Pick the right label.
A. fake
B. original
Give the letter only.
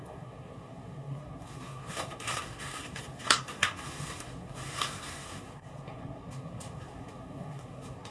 A